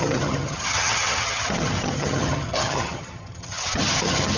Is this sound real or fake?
fake